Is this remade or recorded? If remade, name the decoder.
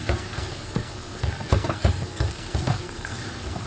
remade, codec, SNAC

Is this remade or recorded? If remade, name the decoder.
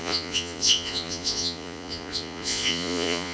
remade, vocoder, Vocos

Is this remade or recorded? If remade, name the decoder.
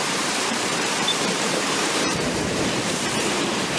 remade, vocoder, BigVGAN v2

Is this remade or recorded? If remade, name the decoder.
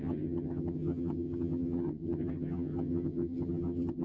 remade, vocoder, HiFi-GAN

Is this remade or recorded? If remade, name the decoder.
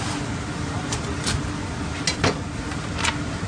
recorded